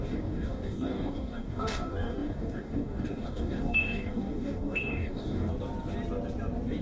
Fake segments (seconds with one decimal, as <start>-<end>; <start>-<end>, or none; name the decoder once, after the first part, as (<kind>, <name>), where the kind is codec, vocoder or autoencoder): 0.0-5.5 (codec, DAC)